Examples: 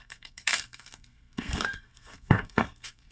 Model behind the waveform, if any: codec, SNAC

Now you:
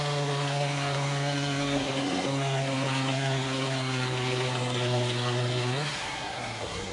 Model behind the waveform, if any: codec, SNAC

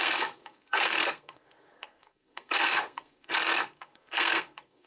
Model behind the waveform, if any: codec, SNAC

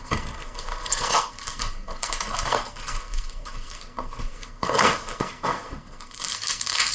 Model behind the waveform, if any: codec, SNAC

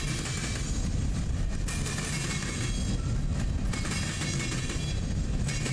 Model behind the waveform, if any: none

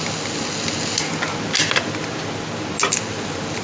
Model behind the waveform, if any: none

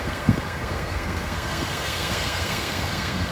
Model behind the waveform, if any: codec, SNAC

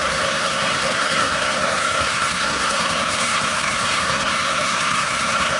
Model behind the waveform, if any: codec, SNAC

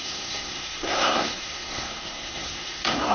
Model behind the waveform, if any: codec, SNAC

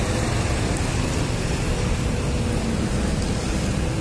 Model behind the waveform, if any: none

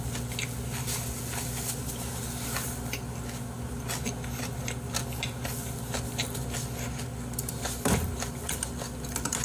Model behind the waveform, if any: none